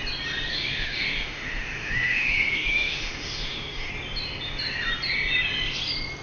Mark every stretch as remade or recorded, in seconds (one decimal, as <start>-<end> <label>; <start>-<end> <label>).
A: 0.0-0.5 recorded; 0.5-3.9 remade; 3.9-6.2 recorded